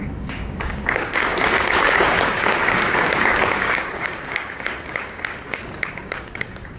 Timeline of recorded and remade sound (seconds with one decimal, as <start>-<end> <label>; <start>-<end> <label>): 0.0-6.8 remade